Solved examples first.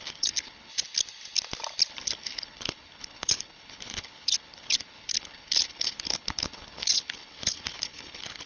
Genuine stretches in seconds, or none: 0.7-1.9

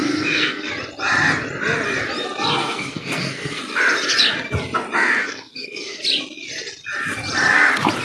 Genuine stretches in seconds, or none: 0.7-2.6; 3.6-5.2; 6.0-8.0

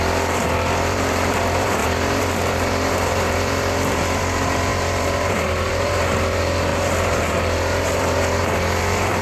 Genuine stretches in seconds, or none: none

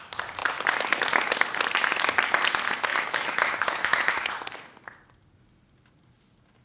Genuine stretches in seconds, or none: 0.0-2.9; 4.3-6.6

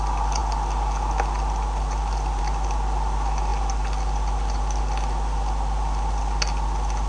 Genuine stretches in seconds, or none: 0.0-7.1

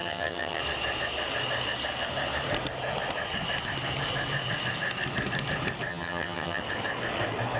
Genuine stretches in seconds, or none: 0.6-5.9; 6.6-7.6

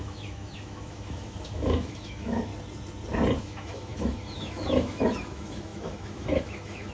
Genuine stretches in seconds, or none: 2.5-3.4